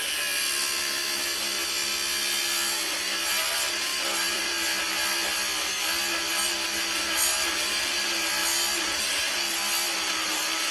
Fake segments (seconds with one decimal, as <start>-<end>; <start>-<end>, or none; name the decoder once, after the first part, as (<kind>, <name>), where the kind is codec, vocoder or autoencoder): 3.9-4.8 (vocoder, BigVGAN v2)

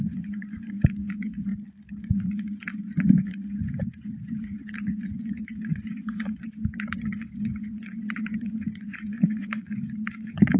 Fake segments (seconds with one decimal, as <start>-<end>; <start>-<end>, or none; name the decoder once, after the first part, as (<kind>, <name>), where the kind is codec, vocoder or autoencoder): 0.0-1.5 (vocoder, Vocos); 2.0-10.6